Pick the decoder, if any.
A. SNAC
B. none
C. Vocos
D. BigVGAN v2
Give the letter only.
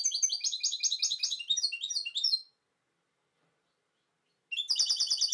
B